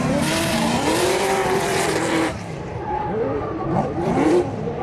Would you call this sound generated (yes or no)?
yes